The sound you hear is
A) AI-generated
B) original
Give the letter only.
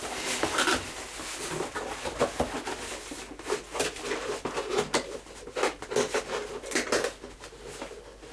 B